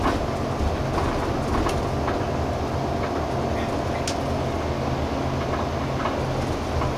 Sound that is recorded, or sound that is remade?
recorded